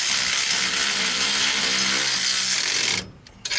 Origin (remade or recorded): recorded